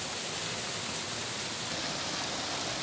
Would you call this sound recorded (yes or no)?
yes